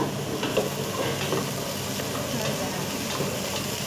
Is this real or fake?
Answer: real